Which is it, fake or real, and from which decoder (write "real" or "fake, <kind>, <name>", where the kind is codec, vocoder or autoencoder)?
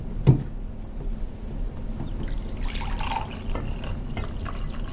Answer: real